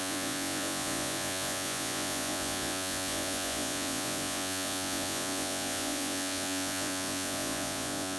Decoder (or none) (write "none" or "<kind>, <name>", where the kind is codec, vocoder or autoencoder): vocoder, Vocos